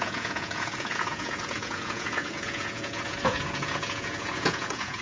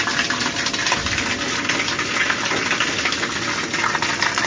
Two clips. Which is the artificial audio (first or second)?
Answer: first